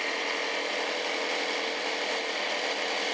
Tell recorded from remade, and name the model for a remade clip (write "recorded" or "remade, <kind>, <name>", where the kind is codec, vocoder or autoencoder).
recorded